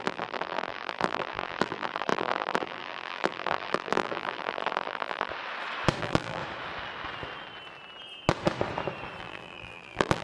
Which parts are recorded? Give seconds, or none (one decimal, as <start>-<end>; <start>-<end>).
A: 5.3-6.0; 6.4-9.2